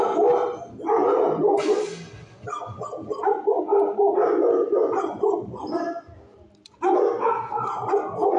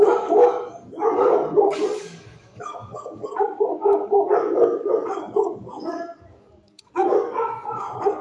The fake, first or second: second